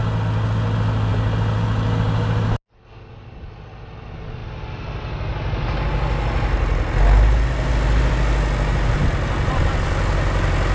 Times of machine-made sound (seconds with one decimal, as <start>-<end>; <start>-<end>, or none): none